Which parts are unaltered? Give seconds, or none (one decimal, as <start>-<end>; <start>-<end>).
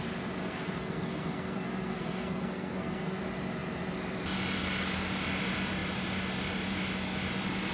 0.0-0.4; 3.2-7.7